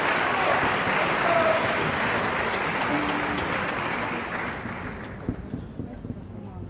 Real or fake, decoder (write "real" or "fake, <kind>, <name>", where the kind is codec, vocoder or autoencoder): fake, vocoder, BigVGAN v2